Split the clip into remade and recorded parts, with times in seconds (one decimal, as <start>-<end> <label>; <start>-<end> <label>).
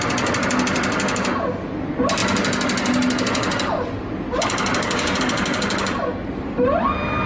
0.0-7.3 recorded